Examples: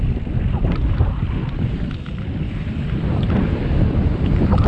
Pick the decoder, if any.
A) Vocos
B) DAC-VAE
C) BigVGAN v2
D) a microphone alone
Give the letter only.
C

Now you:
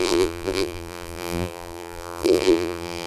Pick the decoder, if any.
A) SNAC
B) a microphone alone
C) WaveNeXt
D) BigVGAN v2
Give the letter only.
D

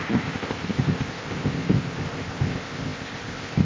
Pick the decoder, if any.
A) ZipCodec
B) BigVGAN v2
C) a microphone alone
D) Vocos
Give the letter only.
A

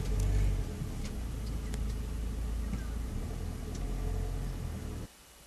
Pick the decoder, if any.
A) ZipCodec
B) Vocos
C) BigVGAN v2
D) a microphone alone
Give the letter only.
D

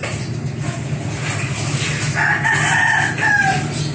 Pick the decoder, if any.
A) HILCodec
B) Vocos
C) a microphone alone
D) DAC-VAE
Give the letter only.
C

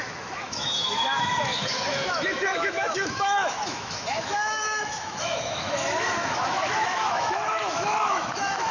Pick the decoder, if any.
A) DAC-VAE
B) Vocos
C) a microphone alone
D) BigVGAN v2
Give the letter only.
A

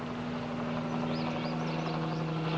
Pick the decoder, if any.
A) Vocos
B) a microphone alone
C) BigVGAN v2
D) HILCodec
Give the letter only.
B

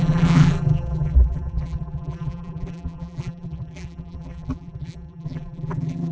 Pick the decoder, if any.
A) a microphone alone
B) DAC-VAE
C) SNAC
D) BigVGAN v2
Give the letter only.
D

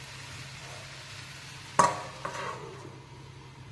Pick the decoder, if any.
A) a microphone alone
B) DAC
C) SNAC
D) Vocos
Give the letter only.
A